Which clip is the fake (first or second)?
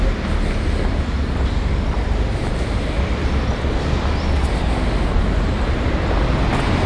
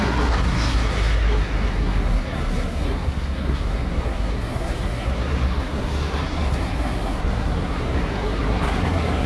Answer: second